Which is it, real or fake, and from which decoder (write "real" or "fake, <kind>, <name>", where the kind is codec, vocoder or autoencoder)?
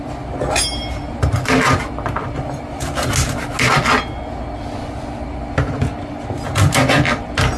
real